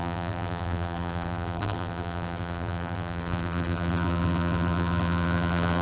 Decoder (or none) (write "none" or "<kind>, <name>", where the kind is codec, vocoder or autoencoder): vocoder, BigVGAN v2